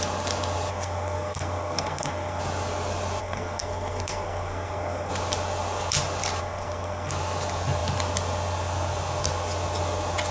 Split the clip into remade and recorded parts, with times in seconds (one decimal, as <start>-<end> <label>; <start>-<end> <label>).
0.0-0.7 recorded; 0.7-2.4 remade; 2.4-3.2 recorded; 3.2-5.1 remade; 5.1-6.4 recorded; 6.4-7.1 remade; 7.1-10.3 recorded